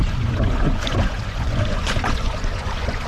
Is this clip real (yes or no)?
no